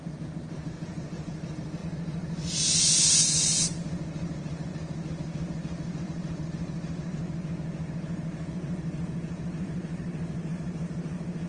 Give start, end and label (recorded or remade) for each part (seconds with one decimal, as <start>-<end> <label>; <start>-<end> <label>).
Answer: 0.0-1.8 remade; 1.8-3.6 recorded; 3.6-7.2 remade; 7.2-8.0 recorded; 8.0-11.5 remade